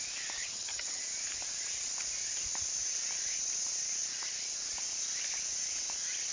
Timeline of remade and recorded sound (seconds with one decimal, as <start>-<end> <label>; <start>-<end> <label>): 0.0-0.4 recorded; 0.4-1.0 remade; 1.0-6.3 recorded